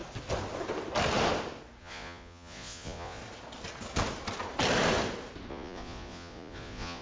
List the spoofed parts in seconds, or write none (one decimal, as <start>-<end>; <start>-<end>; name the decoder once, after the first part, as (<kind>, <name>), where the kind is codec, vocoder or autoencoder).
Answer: 1.8-3.2 (vocoder, Vocos); 5.5-7.0